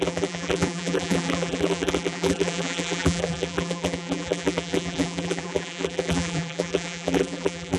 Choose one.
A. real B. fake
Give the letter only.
B